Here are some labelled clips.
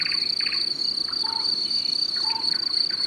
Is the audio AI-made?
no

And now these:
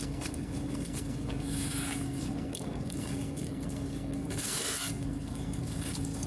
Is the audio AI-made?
yes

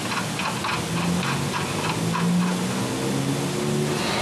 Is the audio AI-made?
no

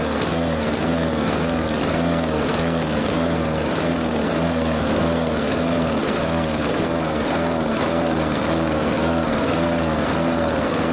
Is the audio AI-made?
yes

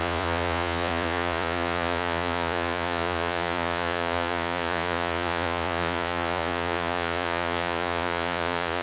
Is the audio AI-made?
yes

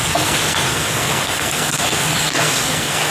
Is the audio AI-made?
yes